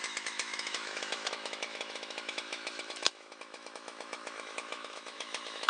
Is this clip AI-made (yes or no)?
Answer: yes